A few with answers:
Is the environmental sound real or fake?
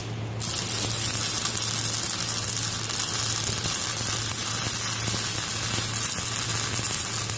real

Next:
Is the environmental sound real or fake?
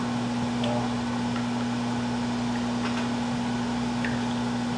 real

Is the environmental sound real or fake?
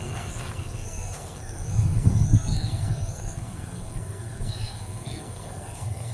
fake